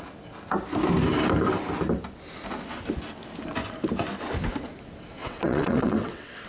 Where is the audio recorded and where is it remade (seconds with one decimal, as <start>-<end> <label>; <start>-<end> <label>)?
0.0-5.2 recorded; 5.2-6.5 remade